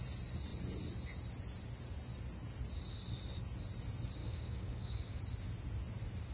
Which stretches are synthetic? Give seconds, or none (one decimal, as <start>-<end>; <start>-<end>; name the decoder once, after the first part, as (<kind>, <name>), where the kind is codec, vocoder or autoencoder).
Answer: 4.2-5.2 (codec, DAC)